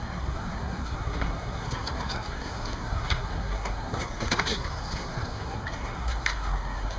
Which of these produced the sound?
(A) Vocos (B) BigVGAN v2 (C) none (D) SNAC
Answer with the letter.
D